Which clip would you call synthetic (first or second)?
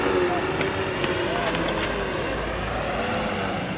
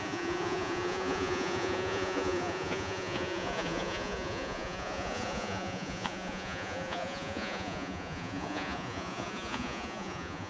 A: second